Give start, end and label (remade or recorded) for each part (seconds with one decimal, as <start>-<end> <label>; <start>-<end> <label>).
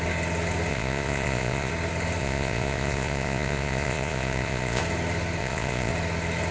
0.0-0.7 recorded; 0.7-1.7 remade; 1.7-2.2 recorded; 2.2-4.8 remade; 4.8-5.4 recorded; 5.4-5.9 remade; 5.9-6.5 recorded